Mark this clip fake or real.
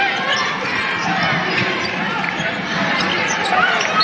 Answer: real